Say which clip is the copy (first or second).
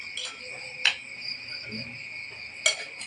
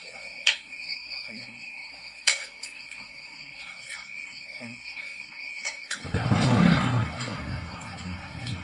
second